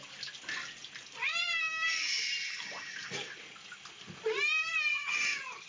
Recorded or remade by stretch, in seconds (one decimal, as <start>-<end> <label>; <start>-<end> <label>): 0.0-4.9 recorded; 4.9-5.7 remade